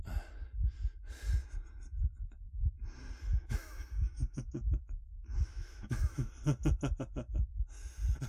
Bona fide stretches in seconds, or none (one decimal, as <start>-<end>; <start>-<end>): 0.0-3.3; 6.3-8.3